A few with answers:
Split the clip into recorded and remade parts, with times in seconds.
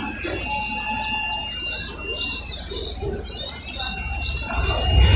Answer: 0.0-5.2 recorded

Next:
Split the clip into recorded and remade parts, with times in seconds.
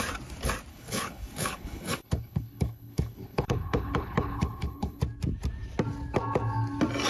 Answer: 0.0-0.7 recorded; 0.7-5.0 remade; 5.0-7.1 recorded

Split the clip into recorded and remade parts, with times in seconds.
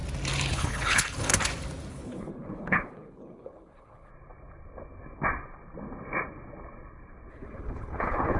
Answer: 0.0-0.5 recorded; 0.5-1.3 remade; 1.3-1.9 recorded; 1.9-4.1 remade; 4.1-7.3 recorded; 7.3-8.4 remade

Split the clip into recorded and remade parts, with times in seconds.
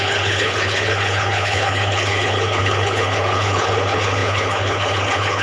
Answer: 0.0-5.4 remade